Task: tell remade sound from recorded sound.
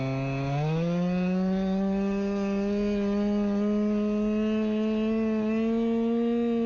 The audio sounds recorded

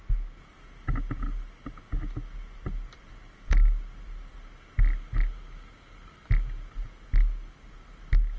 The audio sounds recorded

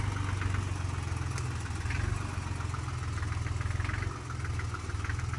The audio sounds recorded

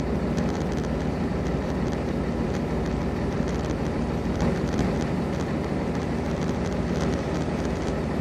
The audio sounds remade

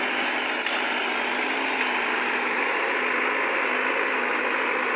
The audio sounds recorded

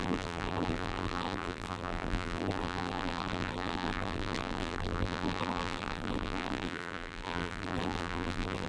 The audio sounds remade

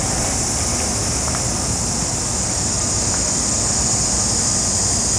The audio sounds recorded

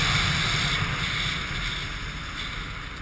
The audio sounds recorded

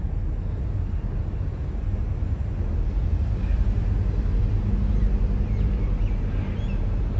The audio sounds recorded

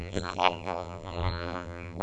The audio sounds remade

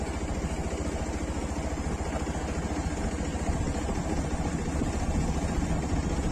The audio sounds recorded